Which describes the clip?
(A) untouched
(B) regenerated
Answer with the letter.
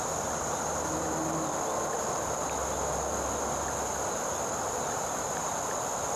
A